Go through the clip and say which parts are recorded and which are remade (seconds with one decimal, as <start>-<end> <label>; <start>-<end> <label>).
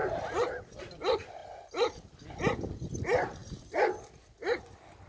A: 0.0-5.1 recorded